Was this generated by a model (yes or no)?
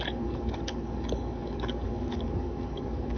yes